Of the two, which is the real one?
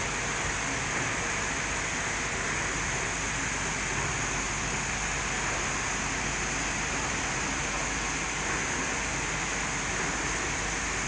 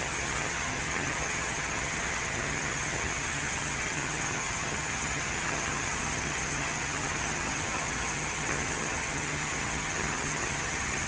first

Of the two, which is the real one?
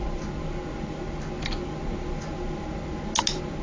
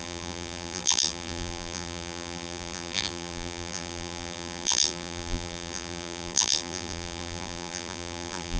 first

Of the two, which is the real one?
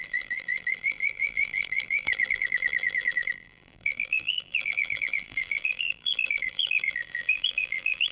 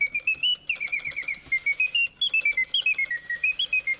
second